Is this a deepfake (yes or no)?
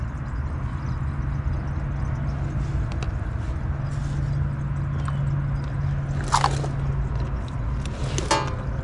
no